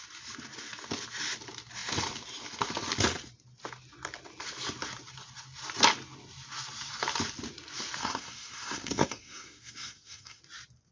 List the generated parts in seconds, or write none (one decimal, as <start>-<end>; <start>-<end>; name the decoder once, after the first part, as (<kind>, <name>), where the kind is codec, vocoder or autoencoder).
8.0-10.4 (codec, SNAC)